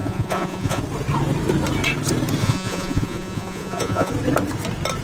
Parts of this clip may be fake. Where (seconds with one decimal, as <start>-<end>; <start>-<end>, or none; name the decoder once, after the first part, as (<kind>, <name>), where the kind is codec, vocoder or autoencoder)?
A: 0.0-0.8 (vocoder, Vocos); 2.4-4.1